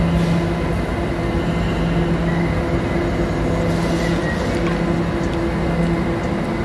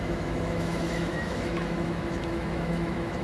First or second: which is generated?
second